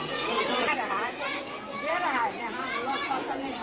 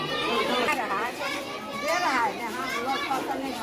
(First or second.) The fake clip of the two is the first